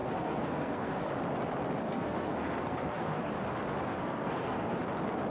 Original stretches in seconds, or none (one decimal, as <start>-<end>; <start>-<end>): 1.1-1.8; 3.3-3.9; 4.8-5.3